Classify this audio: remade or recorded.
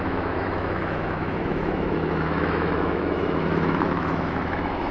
remade